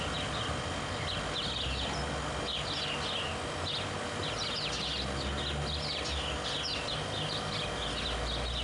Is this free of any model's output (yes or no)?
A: yes